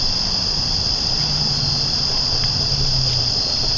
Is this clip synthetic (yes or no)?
yes